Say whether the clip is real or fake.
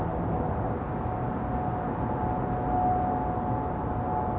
real